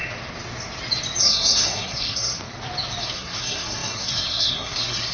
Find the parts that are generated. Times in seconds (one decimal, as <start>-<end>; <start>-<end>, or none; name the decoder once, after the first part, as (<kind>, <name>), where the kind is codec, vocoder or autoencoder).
1.2-2.4 (codec, SNAC); 3.0-5.1